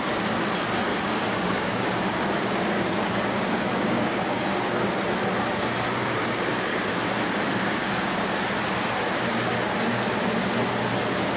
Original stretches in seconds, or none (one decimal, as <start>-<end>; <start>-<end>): 0.0-0.9; 4.8-6.0; 6.9-7.8; 8.4-11.4